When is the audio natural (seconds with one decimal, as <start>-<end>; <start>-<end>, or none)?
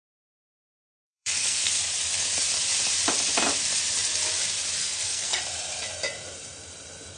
0.0-0.5; 1.8-4.8; 5.4-7.2